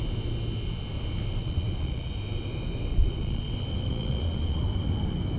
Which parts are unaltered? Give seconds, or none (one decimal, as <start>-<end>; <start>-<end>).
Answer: 0.0-1.4; 2.1-2.9; 3.5-3.9; 4.6-5.4